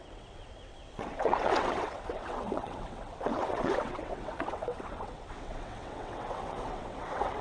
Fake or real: fake